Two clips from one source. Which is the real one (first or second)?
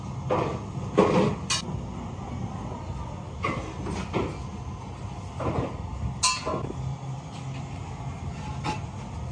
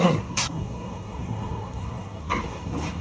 first